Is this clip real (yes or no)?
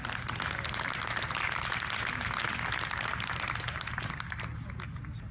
yes